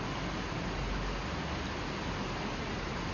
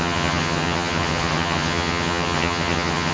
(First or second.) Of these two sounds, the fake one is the second